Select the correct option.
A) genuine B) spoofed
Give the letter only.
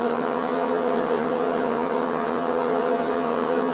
B